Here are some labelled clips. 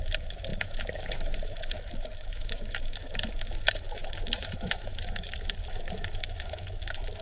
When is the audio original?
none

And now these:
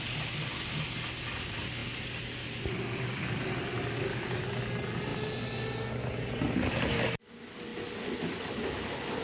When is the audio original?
0.0-9.2

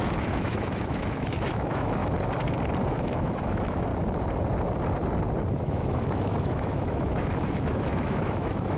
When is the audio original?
2.0-2.9; 3.9-5.6

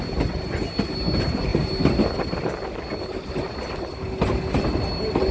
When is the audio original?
0.0-5.3

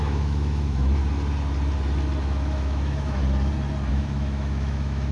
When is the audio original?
1.0-2.2; 3.2-3.9

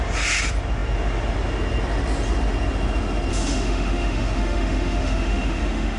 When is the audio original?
0.0-3.3